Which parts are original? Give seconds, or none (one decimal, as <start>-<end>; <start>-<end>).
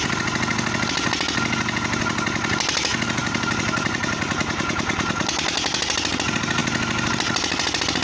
0.0-3.2; 5.1-8.0